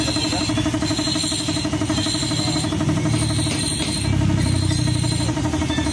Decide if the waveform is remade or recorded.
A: recorded